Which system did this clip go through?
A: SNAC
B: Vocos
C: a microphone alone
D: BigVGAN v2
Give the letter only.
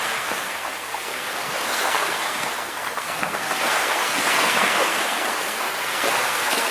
A